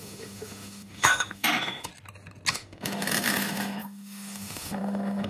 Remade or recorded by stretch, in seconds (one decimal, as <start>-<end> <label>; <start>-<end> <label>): 0.0-1.9 remade; 1.9-2.5 recorded; 2.5-5.3 remade